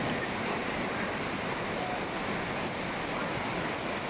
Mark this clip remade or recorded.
recorded